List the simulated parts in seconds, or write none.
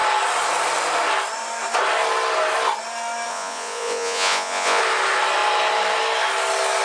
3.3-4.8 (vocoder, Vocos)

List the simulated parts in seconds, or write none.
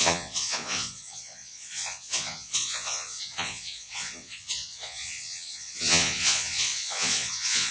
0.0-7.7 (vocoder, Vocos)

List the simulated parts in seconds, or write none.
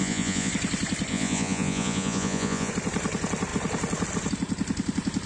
0.0-0.5 (vocoder, Vocos); 1.1-2.7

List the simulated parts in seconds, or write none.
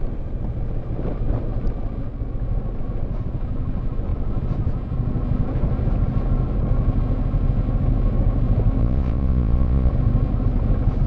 8.8-9.9 (vocoder, Vocos)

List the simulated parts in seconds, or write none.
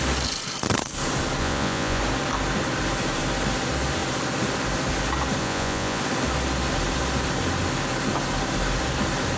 1.4-2.0 (vocoder, Vocos); 5.4-6.0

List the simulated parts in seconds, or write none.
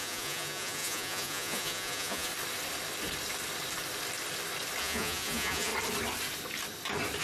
0.0-2.3 (vocoder, Vocos); 4.8-5.7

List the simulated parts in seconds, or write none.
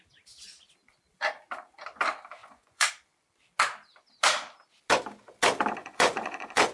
2.4-2.9 (vocoder, Vocos); 5.8-6.7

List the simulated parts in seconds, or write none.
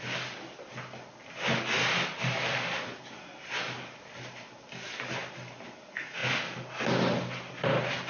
none